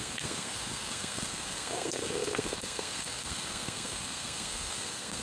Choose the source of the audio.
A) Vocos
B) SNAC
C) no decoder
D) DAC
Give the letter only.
B